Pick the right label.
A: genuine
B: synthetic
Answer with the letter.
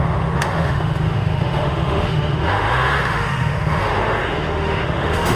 B